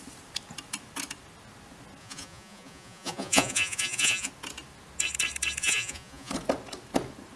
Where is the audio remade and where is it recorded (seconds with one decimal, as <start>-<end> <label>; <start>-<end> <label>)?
0.0-2.0 recorded; 2.0-4.3 remade; 4.3-5.6 recorded; 5.6-6.3 remade; 6.3-7.4 recorded